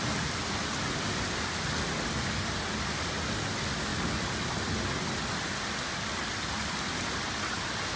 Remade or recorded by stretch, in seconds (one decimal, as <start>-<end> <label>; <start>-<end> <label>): 0.0-8.0 recorded